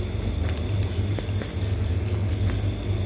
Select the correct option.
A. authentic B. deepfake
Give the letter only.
A